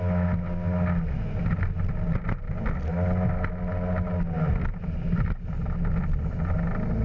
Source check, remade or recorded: recorded